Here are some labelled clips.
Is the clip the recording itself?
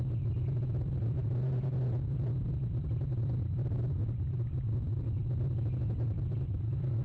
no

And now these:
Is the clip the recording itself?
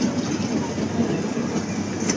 yes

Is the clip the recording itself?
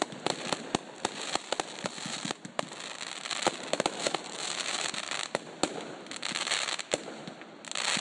yes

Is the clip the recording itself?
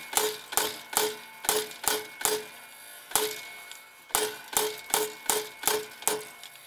yes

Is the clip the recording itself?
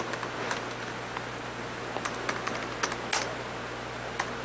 yes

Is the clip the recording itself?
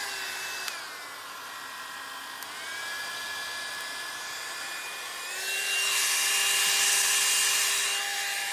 yes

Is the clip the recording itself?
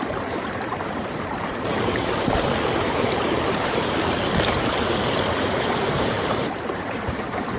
no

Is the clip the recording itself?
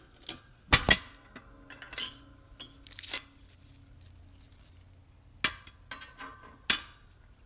yes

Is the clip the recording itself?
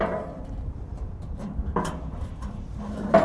no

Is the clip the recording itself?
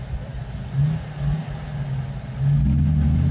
yes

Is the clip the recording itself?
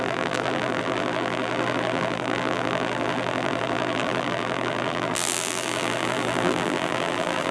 no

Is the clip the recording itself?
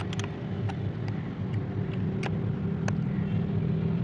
yes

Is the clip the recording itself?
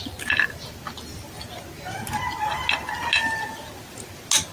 yes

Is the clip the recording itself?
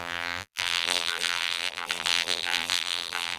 no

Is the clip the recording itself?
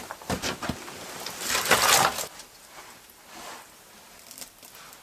yes